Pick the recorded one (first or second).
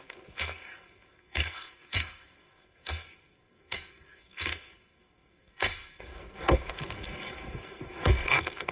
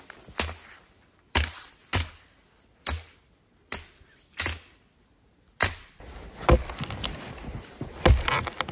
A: second